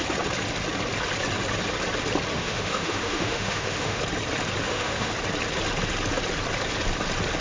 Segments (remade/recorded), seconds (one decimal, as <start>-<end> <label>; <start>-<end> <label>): 0.0-2.3 recorded; 2.3-4.0 remade; 4.0-4.6 recorded; 4.6-5.1 remade; 5.1-7.4 recorded